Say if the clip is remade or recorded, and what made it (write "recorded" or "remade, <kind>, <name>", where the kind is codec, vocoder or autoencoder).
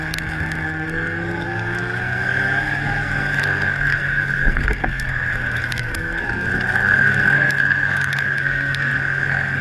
remade, codec, SNAC